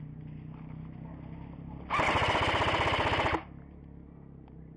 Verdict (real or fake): real